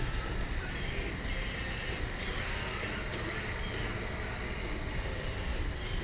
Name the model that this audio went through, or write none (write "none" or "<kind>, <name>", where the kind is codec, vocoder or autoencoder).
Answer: none